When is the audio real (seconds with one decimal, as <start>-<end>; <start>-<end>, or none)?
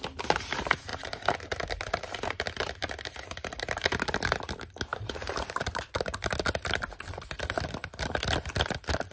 0.0-4.9; 6.3-9.1